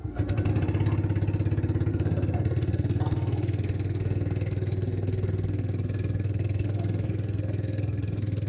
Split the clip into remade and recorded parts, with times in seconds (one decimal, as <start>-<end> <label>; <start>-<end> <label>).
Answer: 0.0-0.5 remade; 0.5-1.9 recorded; 1.9-8.5 remade

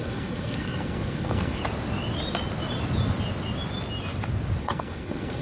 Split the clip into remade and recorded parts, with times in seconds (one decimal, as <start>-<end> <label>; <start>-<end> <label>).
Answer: 0.0-1.6 remade; 1.6-4.6 recorded; 4.6-5.4 remade

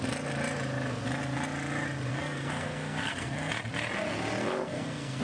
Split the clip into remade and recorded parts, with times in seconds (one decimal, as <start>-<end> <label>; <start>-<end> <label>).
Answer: 0.0-2.1 recorded; 2.1-3.5 remade; 3.5-4.4 recorded; 4.4-5.2 remade

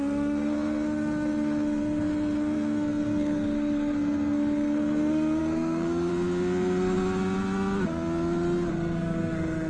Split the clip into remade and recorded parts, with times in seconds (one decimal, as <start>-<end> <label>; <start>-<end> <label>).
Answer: 0.0-6.1 remade; 6.1-8.7 recorded; 8.7-9.7 remade

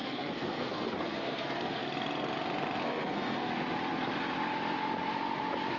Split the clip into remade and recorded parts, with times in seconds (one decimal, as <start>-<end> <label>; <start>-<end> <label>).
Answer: 0.0-1.8 remade; 1.8-2.8 recorded; 2.8-3.5 remade; 3.5-5.8 recorded